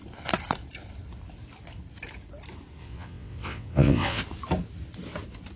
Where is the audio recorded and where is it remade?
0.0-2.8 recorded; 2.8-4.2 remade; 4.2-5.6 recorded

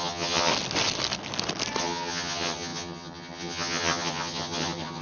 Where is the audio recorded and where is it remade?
0.0-0.5 remade; 0.5-1.8 recorded; 1.8-5.0 remade

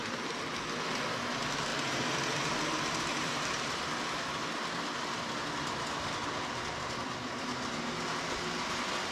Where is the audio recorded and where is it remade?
0.0-1.7 recorded; 1.7-2.2 remade; 2.2-3.1 recorded; 3.1-3.8 remade; 3.8-9.1 recorded

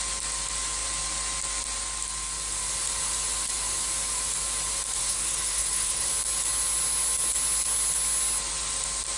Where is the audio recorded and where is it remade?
0.0-5.0 recorded; 5.0-6.1 remade; 6.1-9.2 recorded

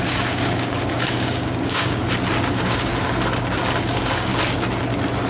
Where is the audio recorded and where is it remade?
0.0-2.0 remade; 2.0-2.5 recorded; 2.5-2.9 remade; 2.9-3.8 recorded; 3.8-4.3 remade; 4.3-5.3 recorded

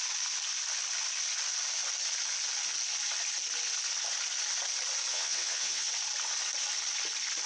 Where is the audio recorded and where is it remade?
0.0-5.1 recorded; 5.1-5.9 remade; 5.9-7.5 recorded

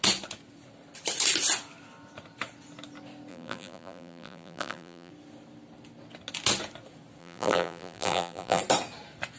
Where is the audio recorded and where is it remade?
0.0-3.3 recorded; 3.3-5.1 remade; 5.1-7.2 recorded; 7.2-8.6 remade; 8.6-9.4 recorded

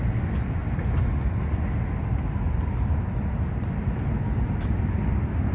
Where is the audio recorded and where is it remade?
0.0-5.5 recorded